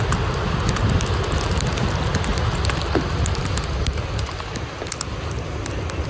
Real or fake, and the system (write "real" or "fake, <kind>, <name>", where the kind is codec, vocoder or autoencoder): real